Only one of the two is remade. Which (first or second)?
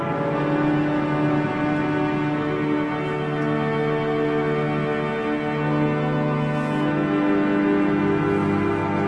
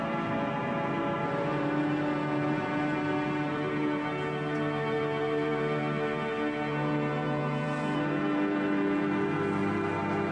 second